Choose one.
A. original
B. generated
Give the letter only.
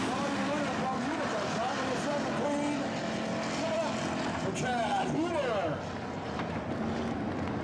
A